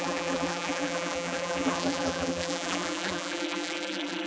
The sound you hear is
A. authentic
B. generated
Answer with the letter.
B